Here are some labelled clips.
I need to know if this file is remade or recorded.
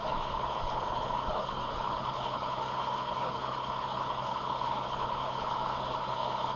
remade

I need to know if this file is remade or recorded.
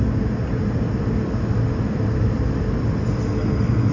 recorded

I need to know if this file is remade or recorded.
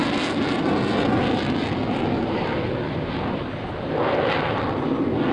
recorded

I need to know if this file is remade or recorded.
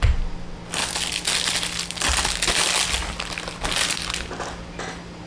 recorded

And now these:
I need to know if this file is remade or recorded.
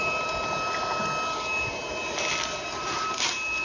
recorded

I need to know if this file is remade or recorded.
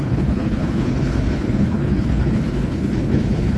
remade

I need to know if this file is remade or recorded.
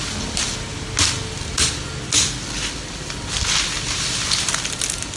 recorded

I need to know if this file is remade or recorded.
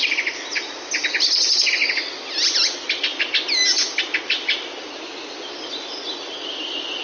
recorded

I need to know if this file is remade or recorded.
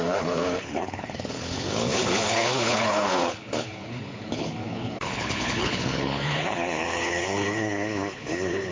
remade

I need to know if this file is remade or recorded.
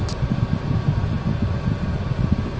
recorded